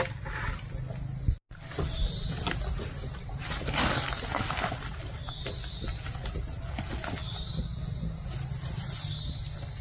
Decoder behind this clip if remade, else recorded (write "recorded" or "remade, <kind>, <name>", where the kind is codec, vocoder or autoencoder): recorded